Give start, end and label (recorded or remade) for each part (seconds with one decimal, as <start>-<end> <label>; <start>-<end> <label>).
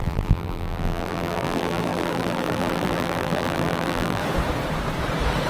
0.0-4.2 remade; 4.2-5.5 recorded